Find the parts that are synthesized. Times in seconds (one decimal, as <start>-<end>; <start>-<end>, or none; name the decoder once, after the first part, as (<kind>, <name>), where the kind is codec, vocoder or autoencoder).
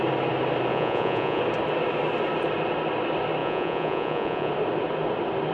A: 0.7-1.4 (vocoder, Vocos); 3.4-4.5